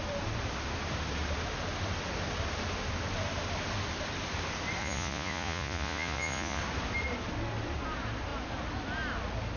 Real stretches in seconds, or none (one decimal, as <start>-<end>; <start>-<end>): 0.0-4.8; 6.6-9.6